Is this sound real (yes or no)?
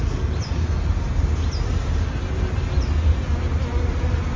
yes